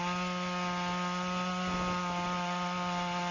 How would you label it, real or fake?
real